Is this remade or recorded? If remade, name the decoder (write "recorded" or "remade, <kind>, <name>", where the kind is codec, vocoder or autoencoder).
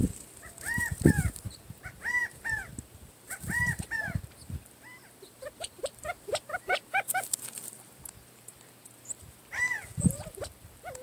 remade, vocoder, BigVGAN v2